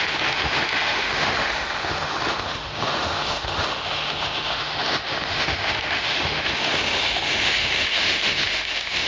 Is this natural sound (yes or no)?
no